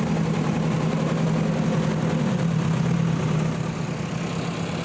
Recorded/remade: recorded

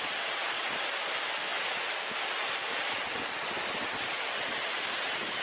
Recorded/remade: recorded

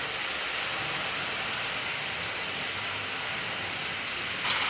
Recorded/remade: recorded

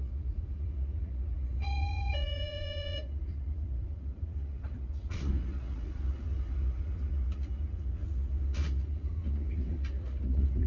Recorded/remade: remade